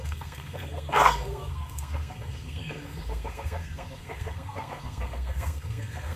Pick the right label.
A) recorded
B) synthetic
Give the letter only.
B